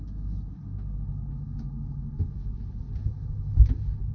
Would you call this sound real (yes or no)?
yes